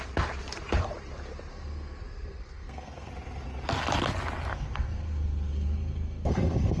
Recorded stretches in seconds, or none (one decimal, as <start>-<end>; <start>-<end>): 0.0-1.5; 3.1-4.5